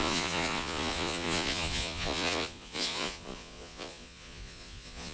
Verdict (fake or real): fake